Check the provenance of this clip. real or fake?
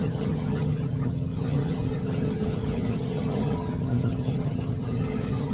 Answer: fake